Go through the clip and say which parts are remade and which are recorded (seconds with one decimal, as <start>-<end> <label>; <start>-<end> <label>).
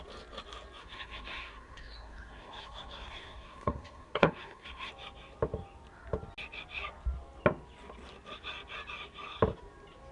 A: 0.0-0.8 recorded; 0.8-4.9 remade; 4.9-10.1 recorded